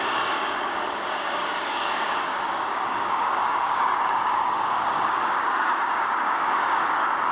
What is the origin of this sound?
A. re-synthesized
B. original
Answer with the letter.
A